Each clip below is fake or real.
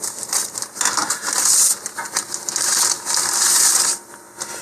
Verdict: real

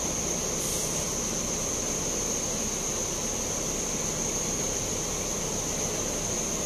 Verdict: real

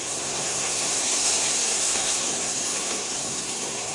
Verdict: fake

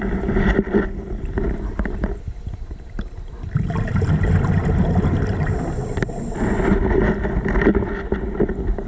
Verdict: real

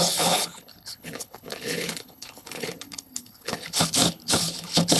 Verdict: fake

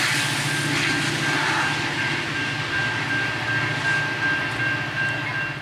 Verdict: real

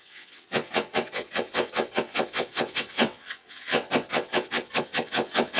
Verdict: fake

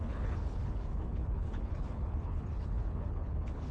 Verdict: fake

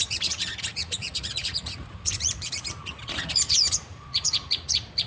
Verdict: fake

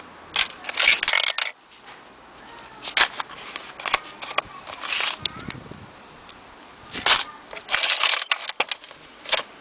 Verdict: real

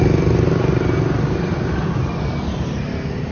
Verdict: real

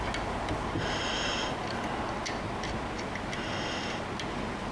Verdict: real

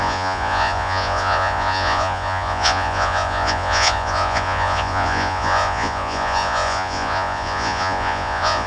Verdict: fake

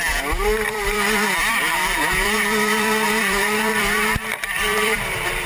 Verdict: fake